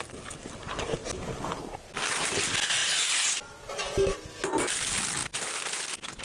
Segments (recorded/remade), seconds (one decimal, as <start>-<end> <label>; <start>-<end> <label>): 0.0-6.2 recorded